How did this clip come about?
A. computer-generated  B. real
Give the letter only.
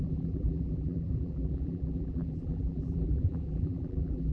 A